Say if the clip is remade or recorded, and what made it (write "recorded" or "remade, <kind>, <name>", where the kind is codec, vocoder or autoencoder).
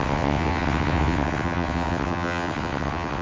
remade, vocoder, WaveNeXt